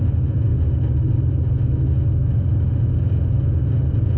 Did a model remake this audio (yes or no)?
no